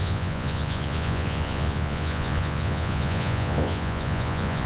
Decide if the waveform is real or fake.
fake